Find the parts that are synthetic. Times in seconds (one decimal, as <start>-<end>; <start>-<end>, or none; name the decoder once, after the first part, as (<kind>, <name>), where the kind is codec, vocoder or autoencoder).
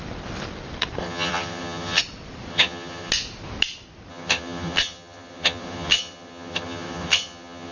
1.0-2.0 (vocoder, HiFi-GAN); 2.5-3.1; 4.1-7.7